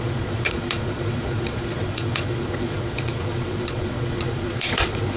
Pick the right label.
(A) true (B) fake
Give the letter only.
B